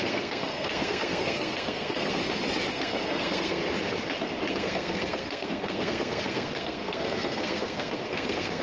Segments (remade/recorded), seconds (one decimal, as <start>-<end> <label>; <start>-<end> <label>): 0.0-2.2 remade; 2.2-2.7 recorded; 2.7-3.6 remade; 3.6-4.5 recorded; 4.5-8.6 remade